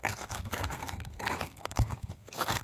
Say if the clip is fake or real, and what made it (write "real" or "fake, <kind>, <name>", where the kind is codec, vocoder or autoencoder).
fake, codec, SNAC